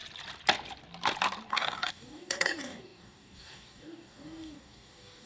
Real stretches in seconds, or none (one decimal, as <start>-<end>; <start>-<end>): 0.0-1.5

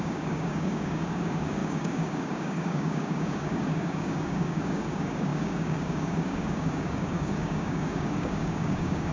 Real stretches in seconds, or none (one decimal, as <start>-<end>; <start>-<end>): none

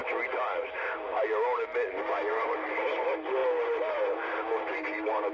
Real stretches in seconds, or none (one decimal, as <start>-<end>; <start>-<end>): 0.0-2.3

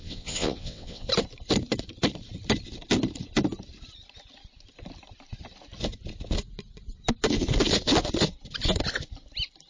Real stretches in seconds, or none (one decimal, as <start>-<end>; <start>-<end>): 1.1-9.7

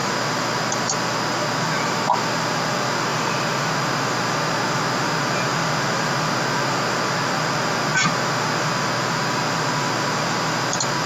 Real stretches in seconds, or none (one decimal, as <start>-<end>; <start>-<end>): 0.0-3.1; 3.7-11.1